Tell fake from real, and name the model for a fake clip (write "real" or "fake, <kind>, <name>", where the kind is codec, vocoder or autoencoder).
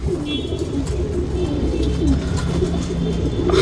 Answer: real